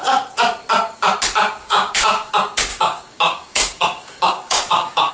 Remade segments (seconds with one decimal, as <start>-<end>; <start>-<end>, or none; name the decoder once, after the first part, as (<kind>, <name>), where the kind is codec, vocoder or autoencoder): 1.6-2.3 (codec, DAC); 2.7-5.1